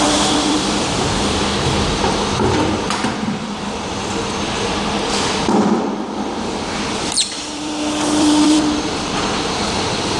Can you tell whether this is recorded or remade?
remade